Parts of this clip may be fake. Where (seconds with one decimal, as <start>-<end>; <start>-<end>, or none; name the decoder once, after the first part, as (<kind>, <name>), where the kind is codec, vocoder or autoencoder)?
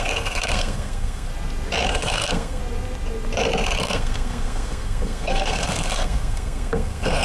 0.0-1.3 (codec, SNAC); 1.9-2.6; 3.8-7.2